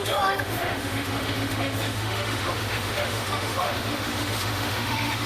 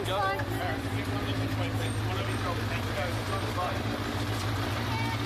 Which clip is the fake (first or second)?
first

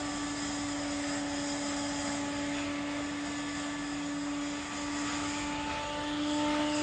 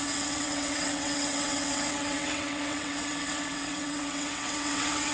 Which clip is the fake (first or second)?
second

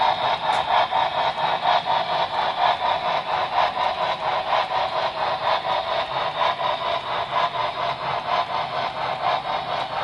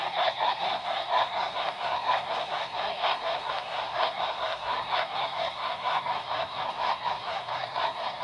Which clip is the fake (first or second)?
second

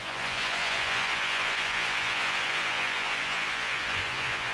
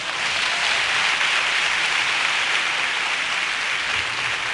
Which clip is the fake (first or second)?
first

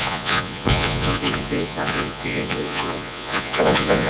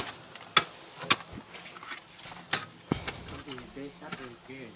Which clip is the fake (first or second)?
first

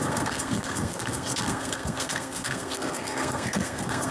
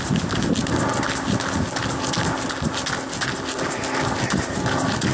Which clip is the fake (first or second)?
first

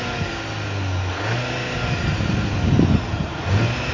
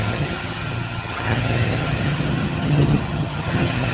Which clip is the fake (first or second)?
second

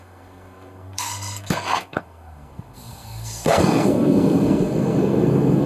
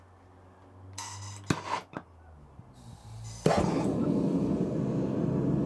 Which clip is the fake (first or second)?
first